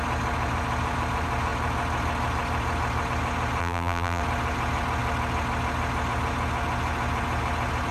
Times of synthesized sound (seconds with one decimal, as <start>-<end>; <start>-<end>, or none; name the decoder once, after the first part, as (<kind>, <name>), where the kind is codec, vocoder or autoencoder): 3.6-4.2 (vocoder, BigVGAN v2)